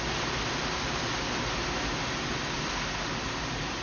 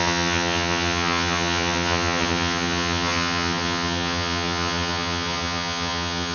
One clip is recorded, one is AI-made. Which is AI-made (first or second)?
second